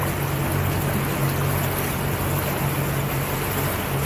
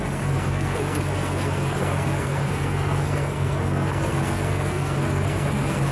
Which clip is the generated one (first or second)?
second